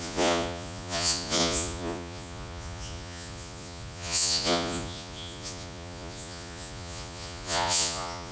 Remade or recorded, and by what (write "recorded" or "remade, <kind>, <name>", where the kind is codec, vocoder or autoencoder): remade, vocoder, Vocos